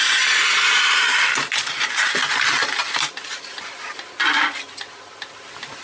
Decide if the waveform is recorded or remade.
recorded